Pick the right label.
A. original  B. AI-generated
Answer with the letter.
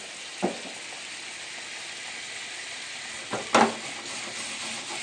A